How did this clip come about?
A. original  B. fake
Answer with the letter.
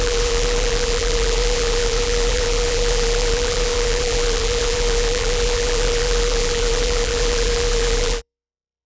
B